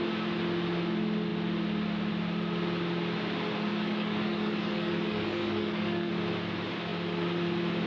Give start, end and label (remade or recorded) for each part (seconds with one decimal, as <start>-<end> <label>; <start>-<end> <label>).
0.0-3.7 recorded; 3.7-6.1 remade; 6.1-7.9 recorded